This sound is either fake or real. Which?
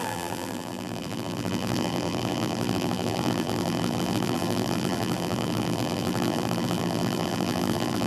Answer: fake